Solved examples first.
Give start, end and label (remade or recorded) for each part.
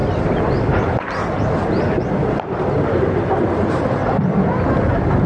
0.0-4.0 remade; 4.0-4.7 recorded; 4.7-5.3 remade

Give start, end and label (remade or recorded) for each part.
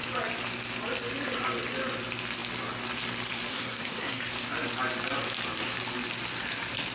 0.0-3.5 recorded; 3.5-4.2 remade; 4.2-6.9 recorded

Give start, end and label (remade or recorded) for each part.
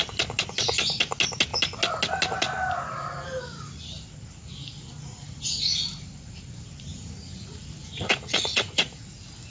0.0-6.9 recorded; 6.9-9.0 remade; 9.0-9.5 recorded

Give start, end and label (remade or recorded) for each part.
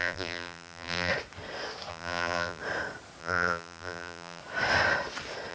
0.0-1.1 remade; 1.1-1.9 recorded; 1.9-2.6 remade; 2.6-3.2 recorded; 3.2-4.4 remade; 4.4-5.5 recorded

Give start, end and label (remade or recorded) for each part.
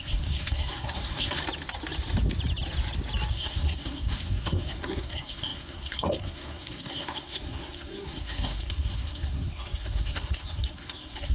0.0-1.4 remade; 1.4-3.3 recorded; 3.3-11.3 remade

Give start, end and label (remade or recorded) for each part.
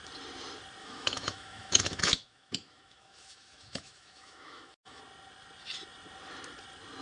0.0-0.8 recorded; 0.8-5.0 remade; 5.0-7.0 recorded